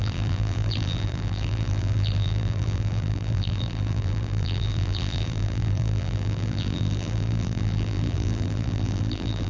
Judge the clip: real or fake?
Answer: fake